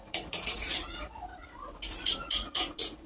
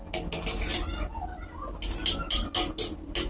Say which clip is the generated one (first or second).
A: first